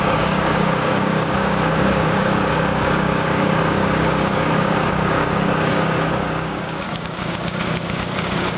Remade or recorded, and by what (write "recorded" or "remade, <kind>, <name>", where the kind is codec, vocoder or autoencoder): remade, codec, DAC